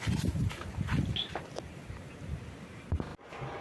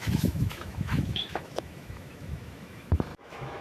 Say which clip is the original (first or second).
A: first